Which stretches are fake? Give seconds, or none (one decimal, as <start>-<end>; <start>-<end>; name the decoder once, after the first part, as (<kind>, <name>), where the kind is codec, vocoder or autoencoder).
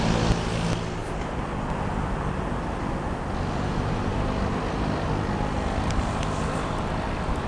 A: none